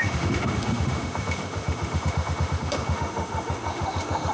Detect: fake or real fake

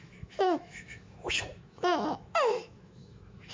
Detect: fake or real fake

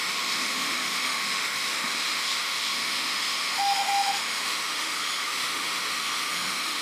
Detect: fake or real fake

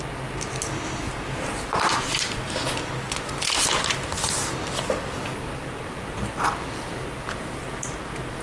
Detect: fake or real real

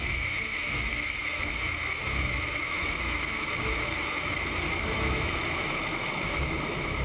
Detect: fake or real fake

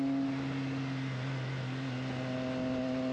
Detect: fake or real real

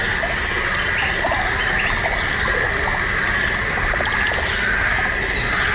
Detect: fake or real real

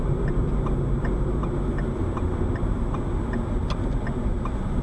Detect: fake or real real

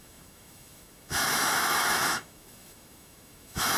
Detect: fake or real fake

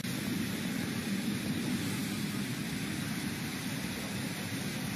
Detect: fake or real real